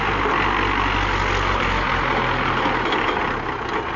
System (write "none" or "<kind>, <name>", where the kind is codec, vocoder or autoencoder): none